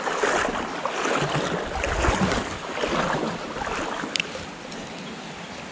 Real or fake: real